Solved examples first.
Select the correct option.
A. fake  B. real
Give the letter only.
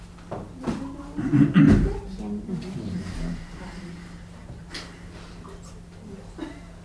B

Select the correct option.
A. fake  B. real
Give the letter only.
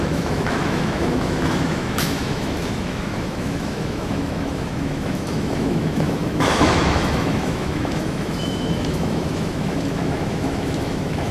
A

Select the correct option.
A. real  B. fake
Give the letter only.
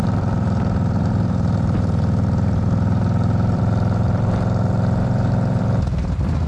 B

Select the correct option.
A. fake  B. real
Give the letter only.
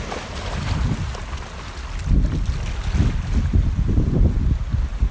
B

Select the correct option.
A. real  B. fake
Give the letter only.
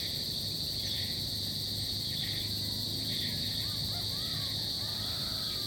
A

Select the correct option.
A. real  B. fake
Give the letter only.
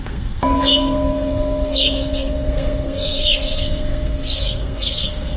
B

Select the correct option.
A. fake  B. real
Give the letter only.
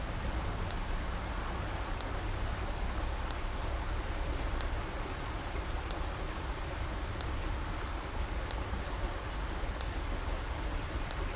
B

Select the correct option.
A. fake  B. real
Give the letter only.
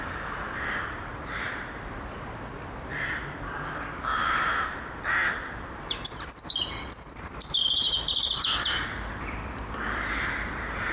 A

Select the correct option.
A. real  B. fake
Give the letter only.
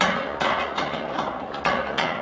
B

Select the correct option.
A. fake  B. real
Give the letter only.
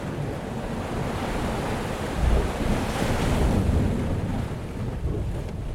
B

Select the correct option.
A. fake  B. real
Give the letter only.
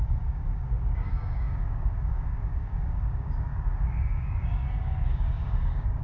A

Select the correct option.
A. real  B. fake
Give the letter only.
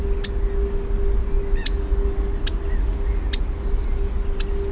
A